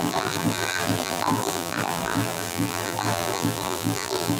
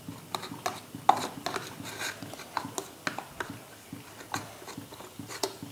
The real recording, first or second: second